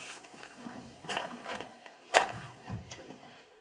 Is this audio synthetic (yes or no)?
yes